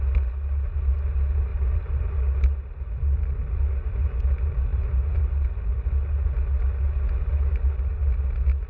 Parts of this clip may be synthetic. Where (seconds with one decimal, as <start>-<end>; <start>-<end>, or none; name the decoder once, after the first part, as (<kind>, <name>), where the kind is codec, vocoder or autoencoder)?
1.5-2.1 (vocoder, BigVGAN v2)